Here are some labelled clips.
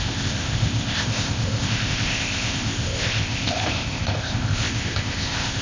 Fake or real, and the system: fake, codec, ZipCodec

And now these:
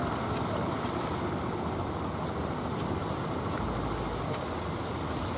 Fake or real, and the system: real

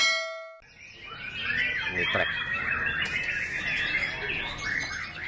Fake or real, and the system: real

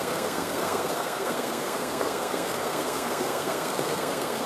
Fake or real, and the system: fake, codec, SNAC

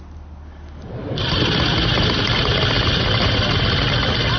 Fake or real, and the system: real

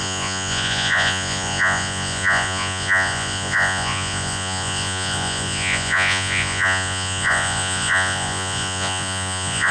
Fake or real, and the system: fake, vocoder, Vocos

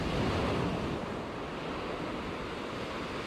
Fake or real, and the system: real